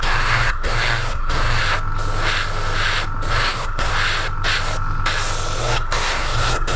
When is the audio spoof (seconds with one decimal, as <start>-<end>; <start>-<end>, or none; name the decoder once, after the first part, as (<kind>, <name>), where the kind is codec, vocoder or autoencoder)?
0.0-1.6 (codec, SNAC); 3.3-3.9; 5.6-6.8